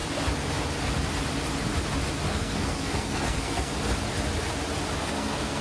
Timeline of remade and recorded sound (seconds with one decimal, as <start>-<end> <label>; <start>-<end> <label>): 0.0-2.3 recorded; 2.3-3.7 remade; 3.7-5.0 recorded; 5.0-5.6 remade